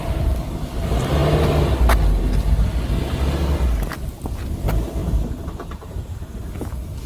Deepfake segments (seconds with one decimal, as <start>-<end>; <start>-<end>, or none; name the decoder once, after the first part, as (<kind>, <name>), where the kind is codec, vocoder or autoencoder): 5.0-5.9 (vocoder, BigVGAN v2)